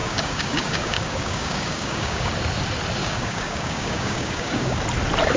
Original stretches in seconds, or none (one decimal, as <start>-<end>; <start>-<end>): 2.3-3.0; 4.8-5.4